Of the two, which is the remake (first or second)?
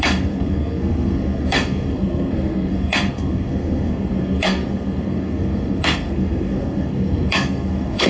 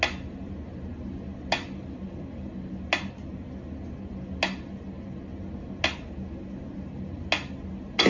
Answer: first